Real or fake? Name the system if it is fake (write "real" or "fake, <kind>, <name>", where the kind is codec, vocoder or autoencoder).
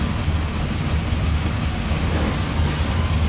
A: real